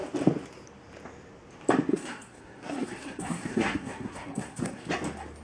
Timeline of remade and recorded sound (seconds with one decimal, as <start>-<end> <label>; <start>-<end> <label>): 0.0-1.9 recorded; 1.9-4.9 remade; 4.9-5.4 recorded